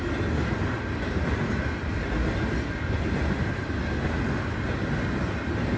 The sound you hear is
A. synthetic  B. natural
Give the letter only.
B